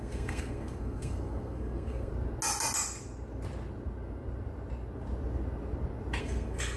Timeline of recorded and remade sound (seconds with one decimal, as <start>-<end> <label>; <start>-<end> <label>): 0.0-2.1 remade; 2.1-6.2 recorded; 6.2-6.8 remade